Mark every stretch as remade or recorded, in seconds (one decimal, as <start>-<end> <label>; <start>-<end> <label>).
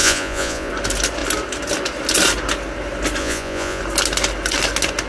0.0-0.7 remade; 0.7-3.2 recorded; 3.2-3.8 remade; 3.8-5.1 recorded